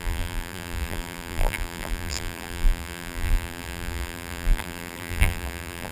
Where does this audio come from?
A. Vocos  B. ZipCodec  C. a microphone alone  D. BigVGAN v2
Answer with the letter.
D